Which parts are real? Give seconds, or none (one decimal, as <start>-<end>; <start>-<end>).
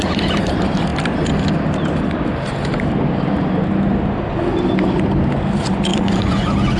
0.0-5.9